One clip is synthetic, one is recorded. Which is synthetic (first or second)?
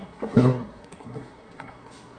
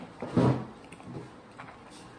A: first